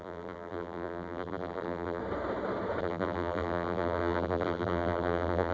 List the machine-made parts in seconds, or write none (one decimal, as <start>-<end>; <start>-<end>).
0.0-2.0; 2.8-5.5